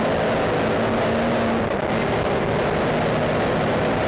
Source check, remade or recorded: recorded